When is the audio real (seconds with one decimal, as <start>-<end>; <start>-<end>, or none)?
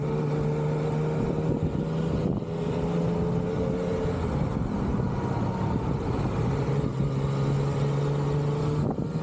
0.0-9.2